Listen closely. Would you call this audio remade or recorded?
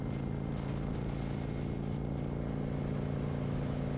recorded